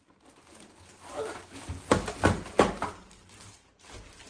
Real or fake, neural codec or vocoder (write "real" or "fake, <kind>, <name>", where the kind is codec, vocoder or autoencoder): real